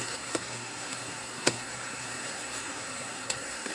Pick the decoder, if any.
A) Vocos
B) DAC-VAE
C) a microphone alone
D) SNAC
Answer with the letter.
D